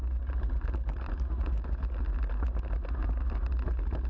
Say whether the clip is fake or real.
real